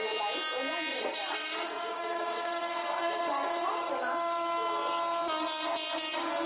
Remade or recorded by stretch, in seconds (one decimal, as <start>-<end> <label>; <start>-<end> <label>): 0.0-0.9 recorded; 0.9-3.9 remade; 3.9-6.5 recorded

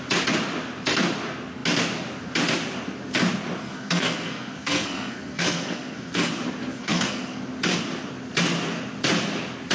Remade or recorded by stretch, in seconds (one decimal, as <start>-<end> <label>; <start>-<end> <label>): 0.0-3.6 recorded; 3.6-6.3 remade; 6.3-6.7 recorded; 6.7-7.4 remade; 7.4-9.7 recorded

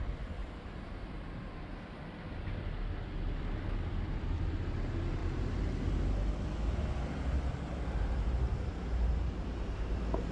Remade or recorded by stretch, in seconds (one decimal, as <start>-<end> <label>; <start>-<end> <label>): 0.0-0.4 recorded; 0.4-1.6 remade; 1.6-5.2 recorded; 5.2-5.8 remade; 5.8-10.3 recorded

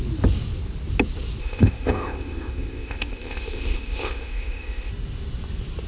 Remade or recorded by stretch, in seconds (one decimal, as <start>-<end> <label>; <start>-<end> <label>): 0.0-1.4 recorded; 1.4-4.9 remade; 4.9-5.9 recorded

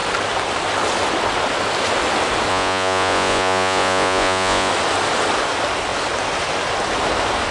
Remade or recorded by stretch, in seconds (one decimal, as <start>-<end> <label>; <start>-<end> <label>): 0.0-2.5 recorded; 2.5-4.7 remade; 4.7-7.5 recorded

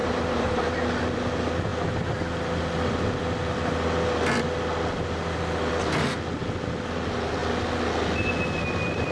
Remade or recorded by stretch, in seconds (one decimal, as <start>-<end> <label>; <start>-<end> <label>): 0.0-0.6 remade; 0.6-9.1 recorded

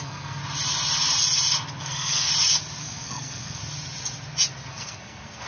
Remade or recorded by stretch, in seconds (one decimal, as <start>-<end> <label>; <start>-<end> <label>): 0.0-0.4 remade; 0.4-1.8 recorded; 1.8-2.3 remade; 2.3-2.8 recorded; 2.8-3.6 remade; 3.6-4.7 recorded; 4.7-5.5 remade